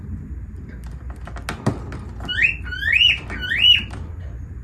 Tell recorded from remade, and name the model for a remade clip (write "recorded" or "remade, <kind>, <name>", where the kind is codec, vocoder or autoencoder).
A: recorded